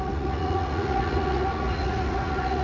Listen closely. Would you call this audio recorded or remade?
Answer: remade